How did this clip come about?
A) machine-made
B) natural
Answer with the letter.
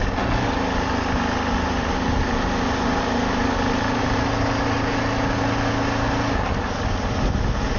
B